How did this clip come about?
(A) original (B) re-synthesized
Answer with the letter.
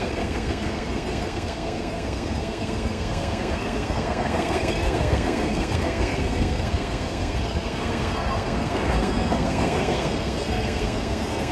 B